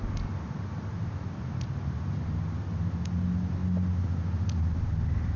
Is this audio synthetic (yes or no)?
no